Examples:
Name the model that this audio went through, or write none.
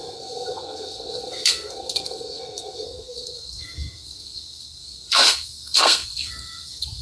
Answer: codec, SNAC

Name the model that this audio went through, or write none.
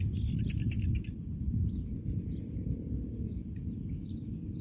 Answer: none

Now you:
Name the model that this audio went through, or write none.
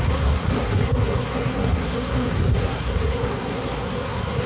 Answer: codec, SNAC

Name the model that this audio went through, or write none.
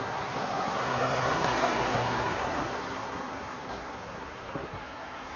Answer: codec, SNAC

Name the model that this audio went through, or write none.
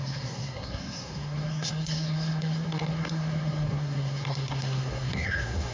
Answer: codec, SNAC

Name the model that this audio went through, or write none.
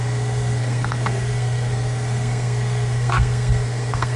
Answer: codec, SNAC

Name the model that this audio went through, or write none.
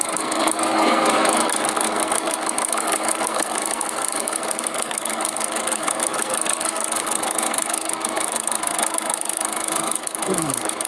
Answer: codec, SNAC